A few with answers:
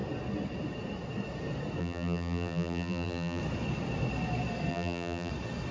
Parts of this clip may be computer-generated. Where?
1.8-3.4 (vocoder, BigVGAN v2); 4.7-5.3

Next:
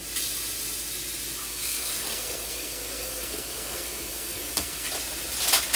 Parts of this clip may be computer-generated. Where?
1.4-4.9 (codec, SNAC)

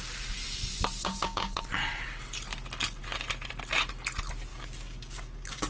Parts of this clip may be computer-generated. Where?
1.0-1.6 (codec, DAC); 4.5-5.7

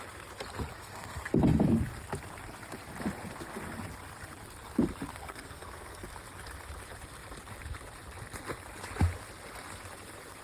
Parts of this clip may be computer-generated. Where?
0.7-1.3 (codec, SNAC); 5.1-6.0

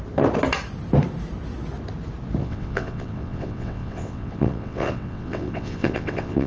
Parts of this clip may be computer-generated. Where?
2.4-6.5 (vocoder, WaveNeXt)